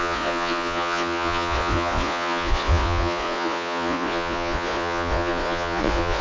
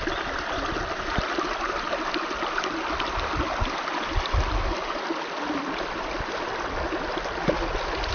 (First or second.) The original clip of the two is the second